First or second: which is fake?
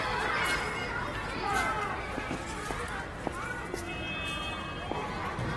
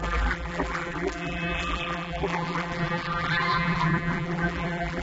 second